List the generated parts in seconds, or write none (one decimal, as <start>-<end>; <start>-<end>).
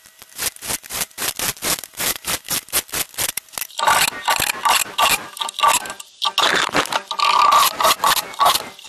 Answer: none